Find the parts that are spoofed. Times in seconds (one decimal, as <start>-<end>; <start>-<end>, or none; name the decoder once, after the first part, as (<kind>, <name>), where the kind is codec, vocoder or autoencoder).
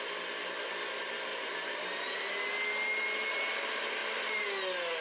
1.3-2.3 (vocoder, BigVGAN v2)